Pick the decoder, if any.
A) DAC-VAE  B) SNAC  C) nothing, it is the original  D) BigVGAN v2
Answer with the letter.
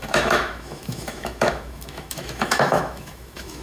A